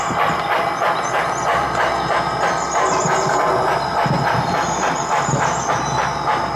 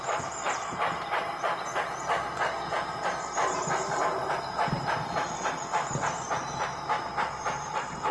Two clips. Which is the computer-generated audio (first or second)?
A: second